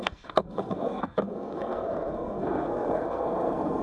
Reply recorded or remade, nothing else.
remade